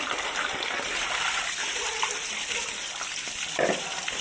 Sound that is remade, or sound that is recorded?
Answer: recorded